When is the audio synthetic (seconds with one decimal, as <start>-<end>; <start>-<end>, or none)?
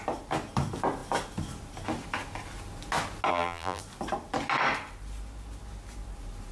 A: 3.3-3.8